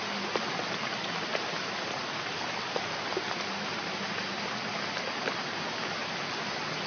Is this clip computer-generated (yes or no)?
no